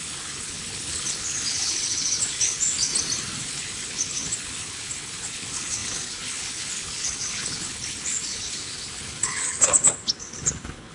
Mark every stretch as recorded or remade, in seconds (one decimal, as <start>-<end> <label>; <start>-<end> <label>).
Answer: 0.0-2.9 remade; 2.9-3.4 recorded; 3.4-10.9 remade